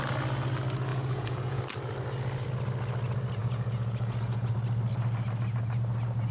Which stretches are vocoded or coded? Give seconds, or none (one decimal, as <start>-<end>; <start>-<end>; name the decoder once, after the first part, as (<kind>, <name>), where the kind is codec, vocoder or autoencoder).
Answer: 0.9-1.6 (vocoder, Vocos); 3.4-4.5